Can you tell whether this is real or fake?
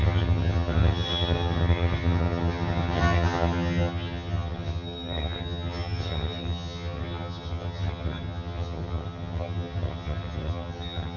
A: fake